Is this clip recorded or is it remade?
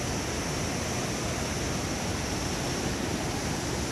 recorded